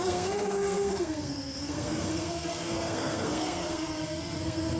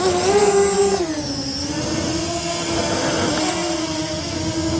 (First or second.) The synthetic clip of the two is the first